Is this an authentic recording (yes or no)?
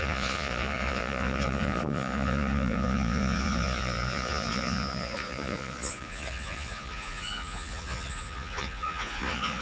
no